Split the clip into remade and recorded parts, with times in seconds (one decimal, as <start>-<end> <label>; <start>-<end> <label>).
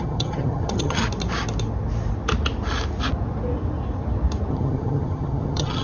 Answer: 0.0-1.0 remade; 1.0-4.5 recorded; 4.5-5.8 remade